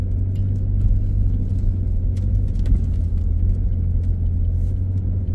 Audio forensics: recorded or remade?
recorded